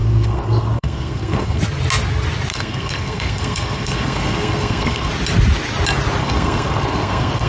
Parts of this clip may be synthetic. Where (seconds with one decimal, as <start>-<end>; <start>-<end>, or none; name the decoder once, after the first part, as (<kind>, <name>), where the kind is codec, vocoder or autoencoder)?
0.0-1.6 (codec, SNAC); 2.5-5.1; 6.2-7.5

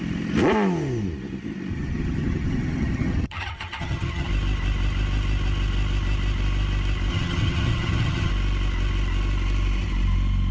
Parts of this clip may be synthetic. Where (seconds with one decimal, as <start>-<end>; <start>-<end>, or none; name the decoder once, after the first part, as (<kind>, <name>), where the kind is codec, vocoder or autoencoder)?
1.7-4.3 (vocoder, HiFi-GAN); 7.1-8.3

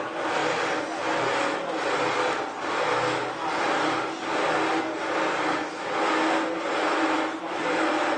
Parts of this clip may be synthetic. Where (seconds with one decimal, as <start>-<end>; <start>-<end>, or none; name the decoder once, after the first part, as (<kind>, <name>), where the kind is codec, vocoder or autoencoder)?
none

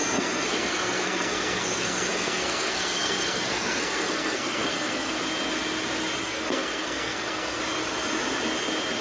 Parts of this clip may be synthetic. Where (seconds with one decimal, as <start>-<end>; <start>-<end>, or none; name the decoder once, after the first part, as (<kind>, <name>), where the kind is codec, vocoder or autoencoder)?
0.0-5.2 (codec, SNAC); 6.2-7.6

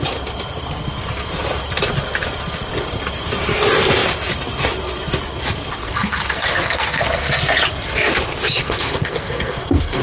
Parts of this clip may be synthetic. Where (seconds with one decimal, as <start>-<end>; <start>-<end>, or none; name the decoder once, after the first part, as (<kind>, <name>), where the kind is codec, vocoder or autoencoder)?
5.8-7.4 (codec, SNAC); 8.6-10.0

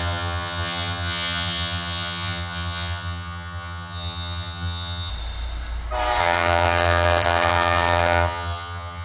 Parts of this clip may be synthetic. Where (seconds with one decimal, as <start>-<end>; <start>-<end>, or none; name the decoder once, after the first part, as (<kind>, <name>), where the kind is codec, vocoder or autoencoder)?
0.0-5.1 (vocoder, HiFi-GAN); 6.2-9.0